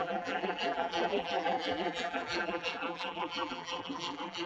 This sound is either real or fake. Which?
fake